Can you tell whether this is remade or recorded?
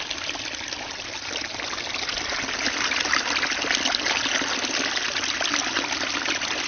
recorded